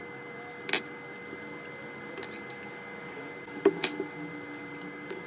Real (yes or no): yes